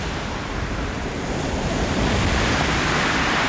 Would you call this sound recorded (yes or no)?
yes